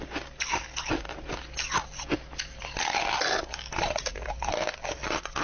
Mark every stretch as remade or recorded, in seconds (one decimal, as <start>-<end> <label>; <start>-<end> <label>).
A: 0.0-5.4 recorded